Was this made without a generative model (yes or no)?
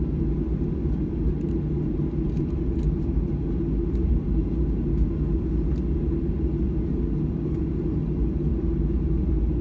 yes